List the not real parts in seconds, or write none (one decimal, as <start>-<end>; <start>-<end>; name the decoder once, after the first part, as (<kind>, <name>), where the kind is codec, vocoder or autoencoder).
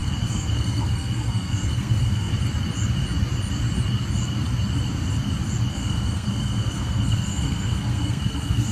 0.0-2.3 (codec, SNAC); 5.7-8.7